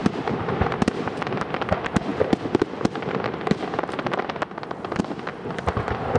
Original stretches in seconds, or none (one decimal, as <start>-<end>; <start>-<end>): 0.0-6.2